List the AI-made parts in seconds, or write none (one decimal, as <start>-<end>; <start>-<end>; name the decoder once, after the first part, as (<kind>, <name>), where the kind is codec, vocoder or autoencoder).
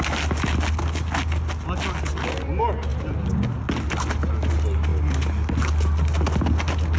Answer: none